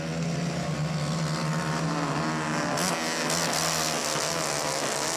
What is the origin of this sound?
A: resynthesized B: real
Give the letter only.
B